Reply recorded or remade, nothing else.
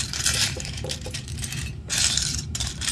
remade